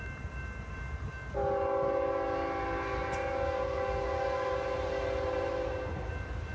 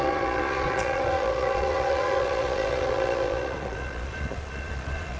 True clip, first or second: first